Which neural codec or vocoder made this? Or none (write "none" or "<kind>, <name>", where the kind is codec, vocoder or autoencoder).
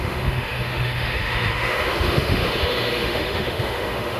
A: autoencoder, DAC-VAE